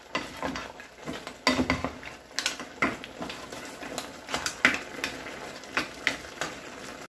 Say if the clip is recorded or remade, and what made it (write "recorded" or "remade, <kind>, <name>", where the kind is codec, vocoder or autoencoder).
recorded